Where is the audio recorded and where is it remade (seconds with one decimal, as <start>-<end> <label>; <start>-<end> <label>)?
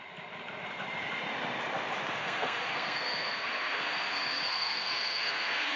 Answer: 0.0-2.2 recorded; 2.2-5.8 remade